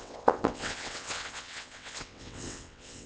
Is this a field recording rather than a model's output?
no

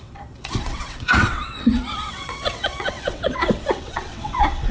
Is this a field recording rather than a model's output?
no